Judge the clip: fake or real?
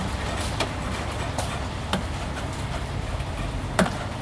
fake